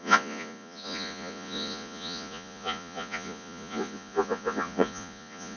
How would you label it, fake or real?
fake